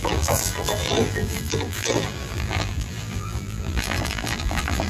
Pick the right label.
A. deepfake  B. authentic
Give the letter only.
A